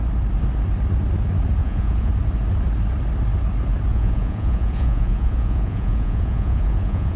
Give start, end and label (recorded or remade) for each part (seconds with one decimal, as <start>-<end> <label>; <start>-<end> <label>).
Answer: 0.0-1.6 recorded; 1.6-2.1 remade; 2.1-3.9 recorded; 3.9-7.2 remade